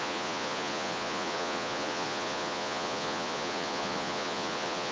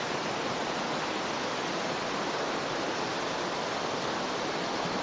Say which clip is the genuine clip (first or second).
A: second